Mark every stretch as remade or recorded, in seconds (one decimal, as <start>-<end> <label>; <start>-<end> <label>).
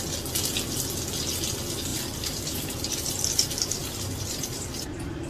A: 0.0-1.9 recorded; 1.9-2.9 remade; 2.9-3.8 recorded; 3.8-5.3 remade